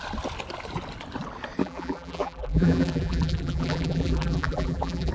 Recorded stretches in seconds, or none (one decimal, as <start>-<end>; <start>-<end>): 0.0-1.6